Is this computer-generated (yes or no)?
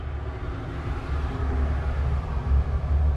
no